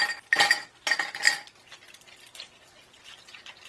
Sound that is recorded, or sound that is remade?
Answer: recorded